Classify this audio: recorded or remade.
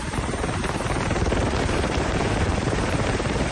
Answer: remade